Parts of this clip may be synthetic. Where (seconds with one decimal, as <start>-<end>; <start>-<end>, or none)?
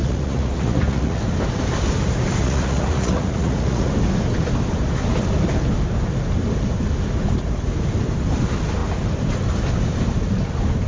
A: 0.0-1.2; 2.4-3.9